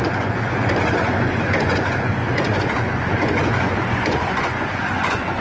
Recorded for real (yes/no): no